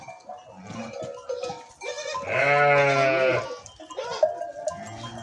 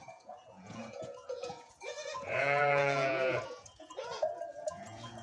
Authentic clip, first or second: first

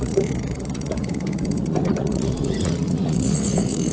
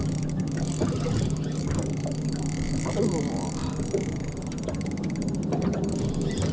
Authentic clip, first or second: second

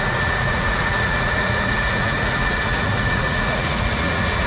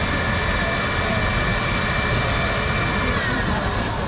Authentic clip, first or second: second